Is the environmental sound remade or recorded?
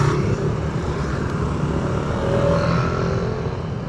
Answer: recorded